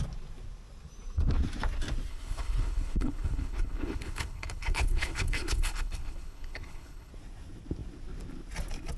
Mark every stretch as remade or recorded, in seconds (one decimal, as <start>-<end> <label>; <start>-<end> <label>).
0.0-2.1 recorded; 2.1-7.1 remade; 7.1-9.0 recorded